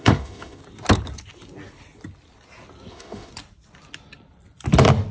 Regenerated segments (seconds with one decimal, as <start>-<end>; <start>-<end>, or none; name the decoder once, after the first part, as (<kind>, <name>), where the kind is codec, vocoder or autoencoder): 0.0-0.6 (autoencoder, DAC-VAE); 2.9-3.3